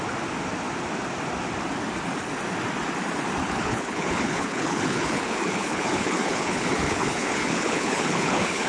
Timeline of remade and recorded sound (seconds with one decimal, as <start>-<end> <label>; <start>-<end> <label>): 0.0-3.4 recorded; 3.4-8.7 remade